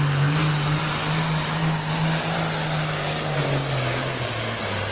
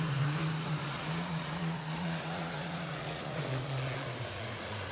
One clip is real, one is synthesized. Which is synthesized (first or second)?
second